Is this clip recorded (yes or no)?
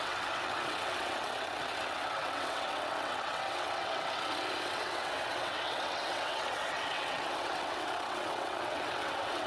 no